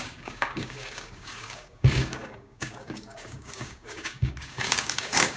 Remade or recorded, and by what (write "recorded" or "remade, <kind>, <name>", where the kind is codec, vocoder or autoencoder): remade, codec, DAC